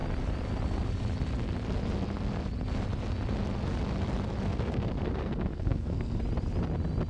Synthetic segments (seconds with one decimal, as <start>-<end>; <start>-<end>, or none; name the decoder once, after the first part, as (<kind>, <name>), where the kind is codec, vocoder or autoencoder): 4.5-6.2 (codec, SNAC)